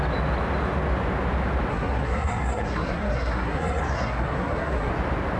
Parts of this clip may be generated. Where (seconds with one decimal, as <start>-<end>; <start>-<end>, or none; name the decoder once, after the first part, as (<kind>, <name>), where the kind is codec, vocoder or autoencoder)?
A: 1.7-4.9 (codec, SNAC)